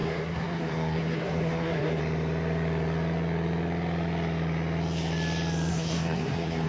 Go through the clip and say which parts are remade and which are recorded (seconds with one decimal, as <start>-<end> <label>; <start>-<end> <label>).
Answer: 0.0-2.0 remade; 2.0-5.7 recorded; 5.7-6.7 remade